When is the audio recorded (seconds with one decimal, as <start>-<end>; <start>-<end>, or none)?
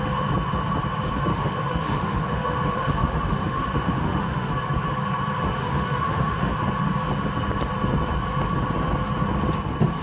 0.0-1.3; 4.5-5.6; 6.5-10.0